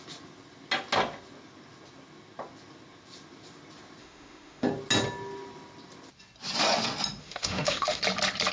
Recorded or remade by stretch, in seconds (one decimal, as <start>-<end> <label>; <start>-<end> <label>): 0.0-4.0 recorded; 4.0-4.7 remade; 4.7-7.2 recorded; 7.2-8.0 remade; 8.0-8.5 recorded